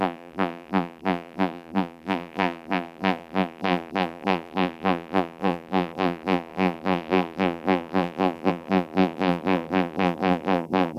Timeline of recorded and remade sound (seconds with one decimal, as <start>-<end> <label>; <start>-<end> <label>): 0.0-11.0 remade